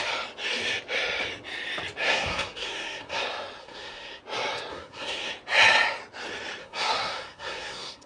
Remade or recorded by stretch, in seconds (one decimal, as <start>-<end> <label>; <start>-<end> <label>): 0.0-2.0 recorded; 2.0-3.2 remade; 3.2-3.6 recorded; 3.6-4.2 remade; 4.2-4.7 recorded; 4.7-5.3 remade; 5.3-6.6 recorded; 6.6-8.1 remade